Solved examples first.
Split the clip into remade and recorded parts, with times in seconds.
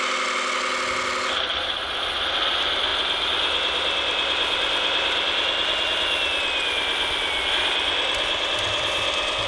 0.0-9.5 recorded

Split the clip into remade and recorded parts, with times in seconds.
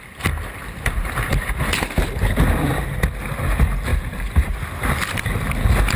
0.0-0.6 recorded; 0.6-1.5 remade; 1.5-3.9 recorded; 3.9-4.6 remade; 4.6-6.0 recorded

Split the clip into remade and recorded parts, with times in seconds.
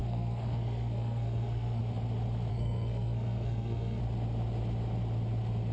0.0-1.8 remade; 1.8-2.5 recorded; 2.5-4.0 remade; 4.0-5.7 recorded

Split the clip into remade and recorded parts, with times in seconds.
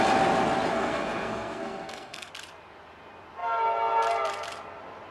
0.0-0.7 recorded; 0.7-2.3 remade; 2.3-5.1 recorded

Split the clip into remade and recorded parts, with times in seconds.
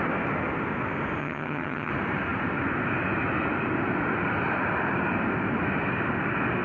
0.0-1.2 recorded; 1.2-1.9 remade; 1.9-6.6 recorded